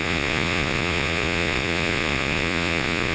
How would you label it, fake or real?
fake